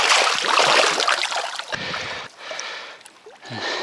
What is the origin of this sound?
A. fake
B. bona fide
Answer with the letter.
B